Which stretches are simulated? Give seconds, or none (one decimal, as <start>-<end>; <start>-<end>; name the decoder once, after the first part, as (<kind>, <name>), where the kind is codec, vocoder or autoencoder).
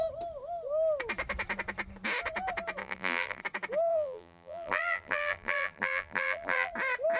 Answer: 2.8-3.4 (vocoder, BigVGAN v2); 3.9-6.7